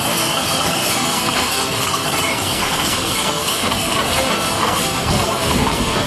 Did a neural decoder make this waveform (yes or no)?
yes